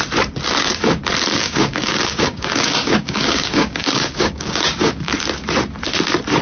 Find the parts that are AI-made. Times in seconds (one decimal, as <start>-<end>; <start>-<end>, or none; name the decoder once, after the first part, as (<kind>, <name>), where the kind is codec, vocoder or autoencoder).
1.3-5.1 (codec, DAC)